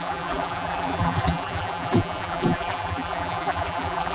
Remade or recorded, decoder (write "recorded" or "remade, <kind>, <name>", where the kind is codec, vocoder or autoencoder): remade, vocoder, BigVGAN v2